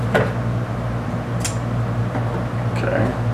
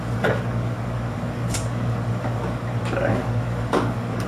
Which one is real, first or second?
first